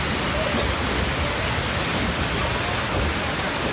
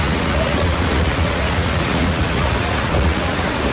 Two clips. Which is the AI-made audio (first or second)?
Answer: second